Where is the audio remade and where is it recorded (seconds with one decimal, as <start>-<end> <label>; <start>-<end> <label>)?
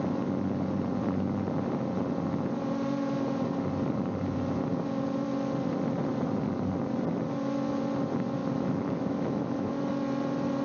0.0-8.4 recorded; 8.4-9.7 remade; 9.7-10.6 recorded